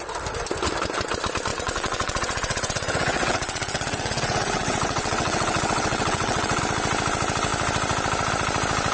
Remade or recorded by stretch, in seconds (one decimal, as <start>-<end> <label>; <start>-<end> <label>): 0.0-1.5 recorded; 1.5-6.6 remade; 6.6-8.9 recorded